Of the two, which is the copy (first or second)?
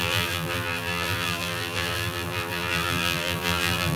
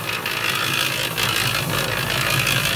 first